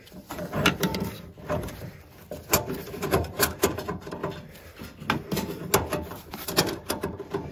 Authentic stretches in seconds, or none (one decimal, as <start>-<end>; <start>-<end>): 0.9-2.5; 4.2-6.3